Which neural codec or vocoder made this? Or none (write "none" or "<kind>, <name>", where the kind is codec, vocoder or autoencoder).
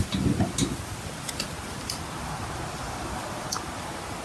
none